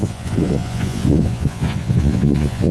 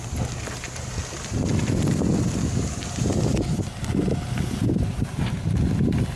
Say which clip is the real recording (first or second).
second